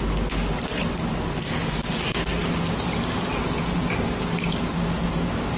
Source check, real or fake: real